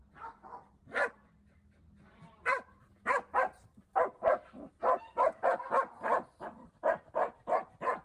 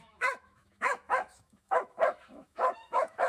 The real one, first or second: first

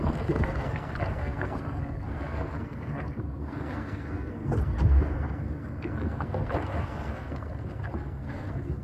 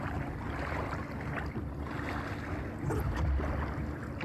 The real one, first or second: second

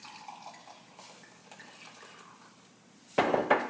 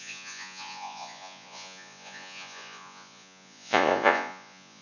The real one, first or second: first